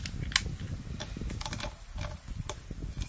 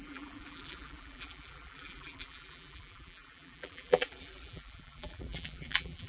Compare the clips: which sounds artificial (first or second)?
second